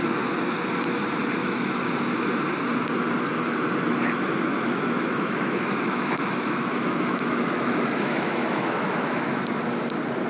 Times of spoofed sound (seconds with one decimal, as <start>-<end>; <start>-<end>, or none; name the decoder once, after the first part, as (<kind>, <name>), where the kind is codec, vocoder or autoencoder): 1.4-1.9 (autoencoder, DAC-VAE); 4.5-9.2